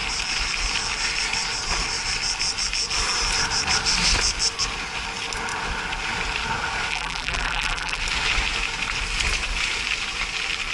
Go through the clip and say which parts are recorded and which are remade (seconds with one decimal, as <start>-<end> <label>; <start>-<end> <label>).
0.0-6.9 recorded; 6.9-8.0 remade; 8.0-10.7 recorded